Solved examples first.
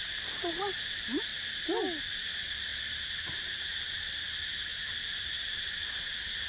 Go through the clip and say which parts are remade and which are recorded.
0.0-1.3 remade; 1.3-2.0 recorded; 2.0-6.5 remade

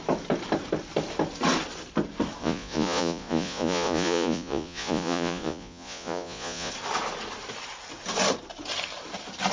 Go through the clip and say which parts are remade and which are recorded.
0.0-2.4 recorded; 2.4-6.7 remade; 6.7-9.5 recorded

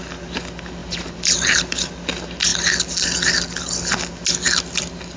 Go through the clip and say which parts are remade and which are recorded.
0.0-0.8 recorded; 0.8-1.9 remade; 1.9-5.2 recorded

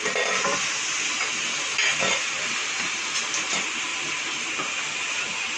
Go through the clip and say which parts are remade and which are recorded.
0.0-5.6 recorded